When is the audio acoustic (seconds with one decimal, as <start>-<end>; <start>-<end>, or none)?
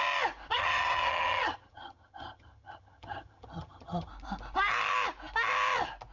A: 0.0-0.5; 4.1-6.1